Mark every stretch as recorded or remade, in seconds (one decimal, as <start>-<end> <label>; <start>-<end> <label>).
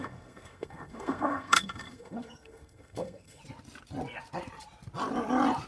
0.0-3.4 remade; 3.4-5.7 recorded